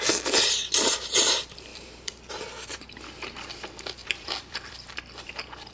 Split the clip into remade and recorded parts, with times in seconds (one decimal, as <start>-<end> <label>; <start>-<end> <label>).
0.0-1.7 recorded; 1.7-2.3 remade; 2.3-4.0 recorded; 4.0-4.7 remade; 4.7-5.7 recorded